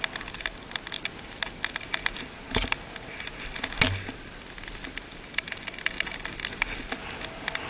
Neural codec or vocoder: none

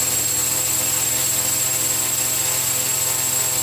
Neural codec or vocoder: none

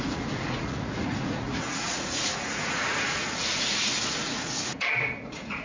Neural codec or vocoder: vocoder, Vocos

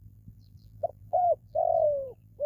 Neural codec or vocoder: vocoder, BigVGAN v2